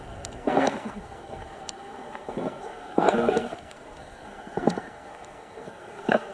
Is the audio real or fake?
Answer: fake